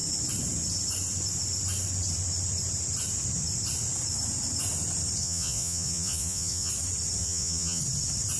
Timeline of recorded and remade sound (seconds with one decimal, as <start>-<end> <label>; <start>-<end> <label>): 0.0-5.2 recorded; 5.2-6.7 remade; 6.7-7.2 recorded; 7.2-7.8 remade; 7.8-8.4 recorded